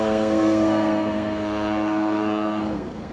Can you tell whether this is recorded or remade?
remade